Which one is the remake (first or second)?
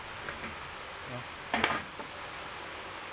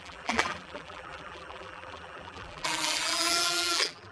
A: second